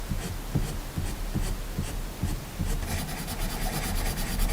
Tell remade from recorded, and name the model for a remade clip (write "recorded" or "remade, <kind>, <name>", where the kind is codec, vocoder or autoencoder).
recorded